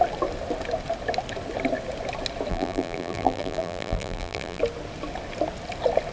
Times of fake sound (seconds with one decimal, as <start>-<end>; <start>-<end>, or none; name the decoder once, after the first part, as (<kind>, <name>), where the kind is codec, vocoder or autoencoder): 2.5-4.6 (vocoder, BigVGAN v2)